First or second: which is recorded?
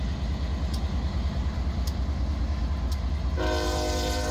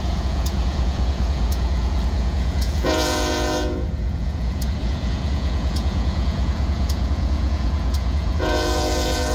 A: first